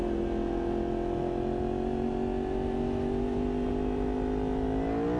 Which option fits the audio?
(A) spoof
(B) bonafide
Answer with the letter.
B